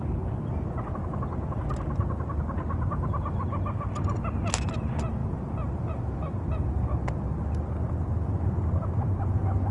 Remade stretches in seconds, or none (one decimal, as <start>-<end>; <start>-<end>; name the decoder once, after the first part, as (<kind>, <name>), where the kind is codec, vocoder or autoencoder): none